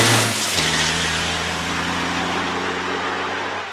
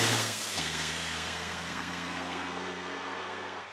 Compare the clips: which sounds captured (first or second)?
first